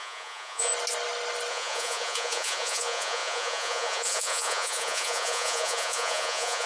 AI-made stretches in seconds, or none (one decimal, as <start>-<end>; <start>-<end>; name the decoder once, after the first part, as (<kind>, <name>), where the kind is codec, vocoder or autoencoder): 0.0-0.7 (vocoder, Vocos); 1.5-6.7